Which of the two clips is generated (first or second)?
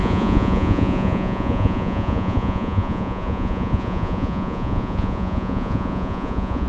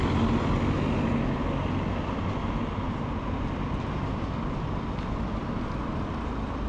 first